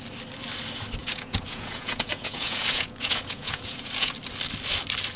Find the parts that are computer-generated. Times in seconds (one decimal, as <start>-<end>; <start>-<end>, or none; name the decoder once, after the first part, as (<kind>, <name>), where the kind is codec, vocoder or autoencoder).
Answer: 1.0-4.1 (vocoder, Vocos)